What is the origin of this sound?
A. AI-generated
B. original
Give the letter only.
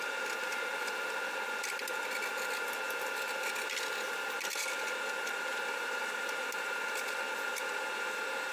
B